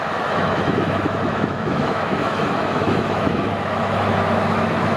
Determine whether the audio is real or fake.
fake